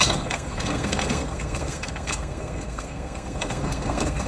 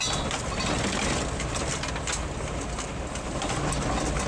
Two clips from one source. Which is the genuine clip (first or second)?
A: second